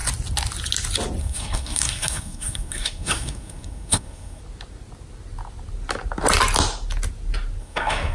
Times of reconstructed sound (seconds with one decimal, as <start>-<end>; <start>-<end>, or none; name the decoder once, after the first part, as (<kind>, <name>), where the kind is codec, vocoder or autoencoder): 1.2-4.4 (codec, SNAC); 7.6-8.1